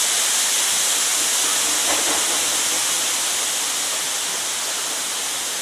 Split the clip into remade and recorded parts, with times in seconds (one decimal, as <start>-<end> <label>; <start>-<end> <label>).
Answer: 0.0-5.6 recorded